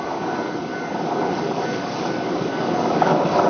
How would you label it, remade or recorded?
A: remade